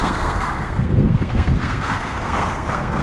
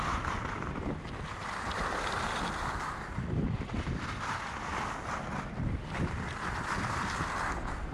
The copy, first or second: first